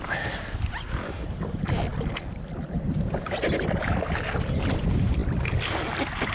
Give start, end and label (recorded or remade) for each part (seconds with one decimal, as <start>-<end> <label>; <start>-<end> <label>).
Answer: 0.0-6.3 recorded